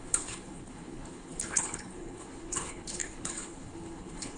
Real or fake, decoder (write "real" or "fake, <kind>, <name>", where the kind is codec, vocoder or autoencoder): fake, codec, HILCodec